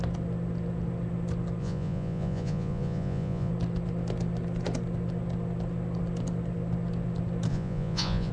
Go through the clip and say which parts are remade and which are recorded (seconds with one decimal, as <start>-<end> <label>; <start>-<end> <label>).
0.0-1.6 recorded; 1.6-3.5 remade; 3.5-7.5 recorded; 7.5-8.3 remade